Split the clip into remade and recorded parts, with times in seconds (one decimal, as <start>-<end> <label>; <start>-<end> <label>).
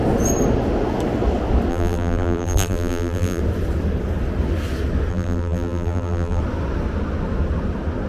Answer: 0.0-1.7 recorded; 1.7-3.4 remade; 3.4-5.1 recorded; 5.1-6.4 remade; 6.4-8.1 recorded